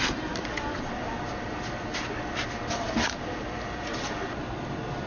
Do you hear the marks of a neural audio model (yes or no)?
no